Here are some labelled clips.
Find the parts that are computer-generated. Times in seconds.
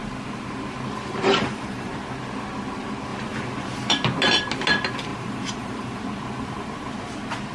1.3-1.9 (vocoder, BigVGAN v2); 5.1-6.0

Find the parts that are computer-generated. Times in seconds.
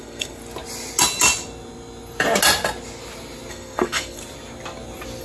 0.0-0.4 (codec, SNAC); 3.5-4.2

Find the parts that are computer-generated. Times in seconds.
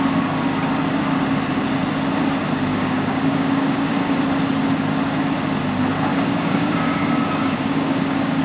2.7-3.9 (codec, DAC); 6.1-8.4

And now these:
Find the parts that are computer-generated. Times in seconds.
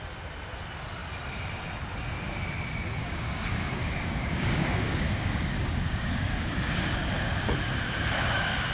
3.0-7.1 (codec, DAC)